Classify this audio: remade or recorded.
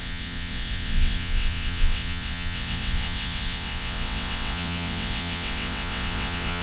remade